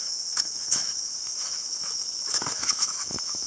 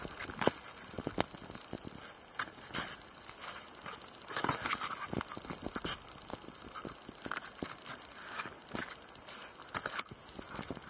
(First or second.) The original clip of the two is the second